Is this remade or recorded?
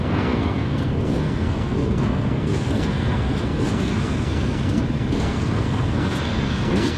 remade